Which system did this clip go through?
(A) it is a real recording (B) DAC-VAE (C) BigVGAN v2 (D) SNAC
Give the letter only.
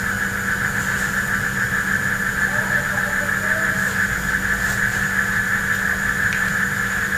A